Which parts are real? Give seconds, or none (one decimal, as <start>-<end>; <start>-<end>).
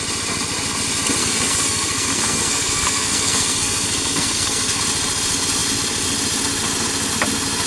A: 0.0-1.2; 4.8-7.7